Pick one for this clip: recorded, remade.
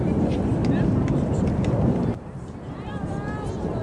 recorded